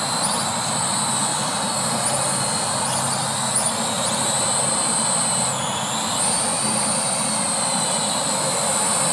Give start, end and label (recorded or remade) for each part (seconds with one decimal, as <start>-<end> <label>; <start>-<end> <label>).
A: 0.0-9.1 recorded